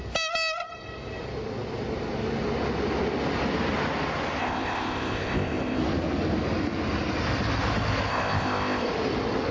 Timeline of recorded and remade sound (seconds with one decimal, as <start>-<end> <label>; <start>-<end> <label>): 0.0-4.4 recorded; 4.4-5.8 remade; 5.8-8.1 recorded; 8.1-8.9 remade; 8.9-9.5 recorded